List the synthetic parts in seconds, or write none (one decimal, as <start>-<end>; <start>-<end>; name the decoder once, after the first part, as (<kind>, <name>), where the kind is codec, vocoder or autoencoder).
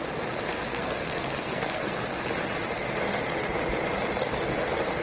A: 0.7-2.0 (codec, SNAC)